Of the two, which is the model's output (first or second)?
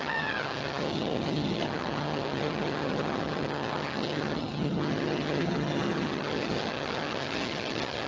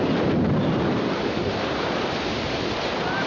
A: first